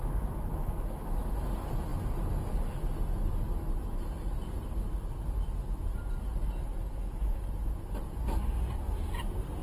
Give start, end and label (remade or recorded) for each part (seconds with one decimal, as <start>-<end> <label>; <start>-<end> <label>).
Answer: 0.0-9.6 recorded